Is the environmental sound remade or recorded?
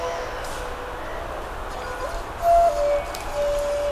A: recorded